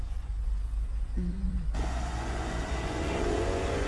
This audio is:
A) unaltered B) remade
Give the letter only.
B